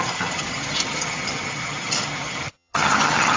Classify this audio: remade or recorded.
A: remade